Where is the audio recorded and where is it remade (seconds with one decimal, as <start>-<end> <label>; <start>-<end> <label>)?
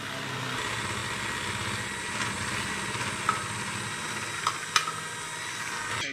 0.0-6.1 recorded